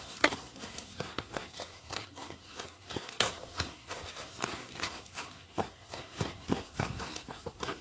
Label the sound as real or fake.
fake